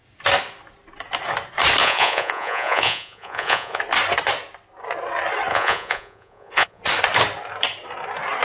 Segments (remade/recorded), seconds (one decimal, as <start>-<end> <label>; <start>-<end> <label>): 0.0-1.8 recorded; 1.8-3.8 remade; 3.8-5.5 recorded; 5.5-6.8 remade; 6.8-8.4 recorded